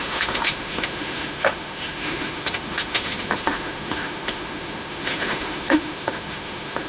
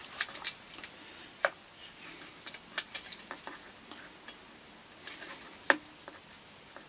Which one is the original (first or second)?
second